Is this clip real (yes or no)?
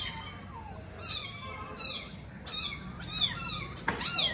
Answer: yes